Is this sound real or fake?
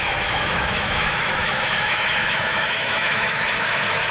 fake